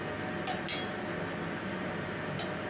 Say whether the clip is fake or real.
real